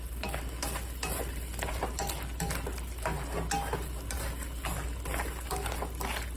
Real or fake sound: real